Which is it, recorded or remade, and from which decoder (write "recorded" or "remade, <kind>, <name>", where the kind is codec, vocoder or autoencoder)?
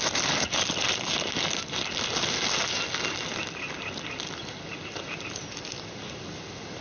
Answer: recorded